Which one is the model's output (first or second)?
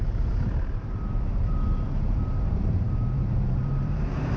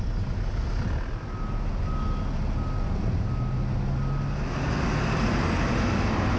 first